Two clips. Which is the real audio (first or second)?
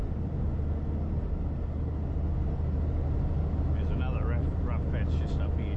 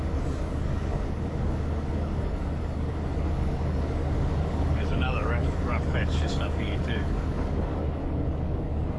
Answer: first